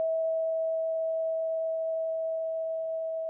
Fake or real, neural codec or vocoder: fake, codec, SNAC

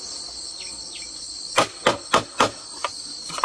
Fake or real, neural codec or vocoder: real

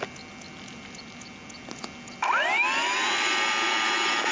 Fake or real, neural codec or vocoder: real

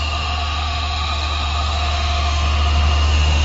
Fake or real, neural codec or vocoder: fake, autoencoder, DAC-VAE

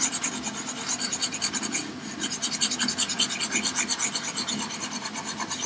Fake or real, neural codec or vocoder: real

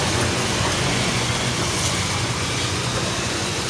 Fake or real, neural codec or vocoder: fake, vocoder, Vocos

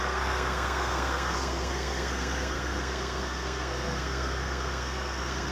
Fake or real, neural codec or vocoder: fake, codec, SNAC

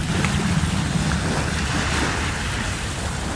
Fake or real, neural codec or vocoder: real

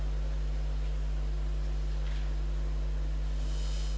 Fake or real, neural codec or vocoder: real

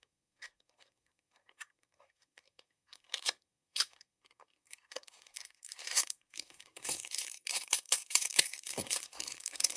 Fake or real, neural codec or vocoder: fake, codec, SNAC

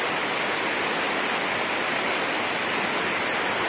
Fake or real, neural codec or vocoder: real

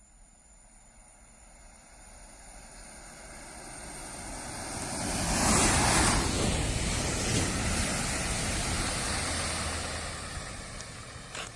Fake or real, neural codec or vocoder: real